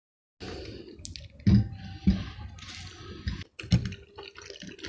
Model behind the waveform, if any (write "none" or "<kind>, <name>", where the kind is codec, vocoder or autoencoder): none